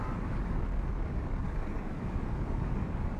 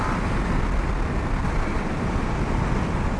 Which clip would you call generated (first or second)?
first